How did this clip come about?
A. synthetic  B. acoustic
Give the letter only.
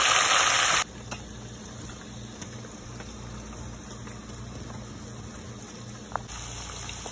B